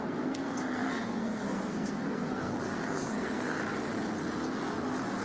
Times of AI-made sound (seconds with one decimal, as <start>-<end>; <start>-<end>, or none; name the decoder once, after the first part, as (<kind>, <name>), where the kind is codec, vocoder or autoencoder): 0.0-3.6 (codec, SNAC)